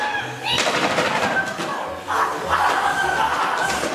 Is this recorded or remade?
recorded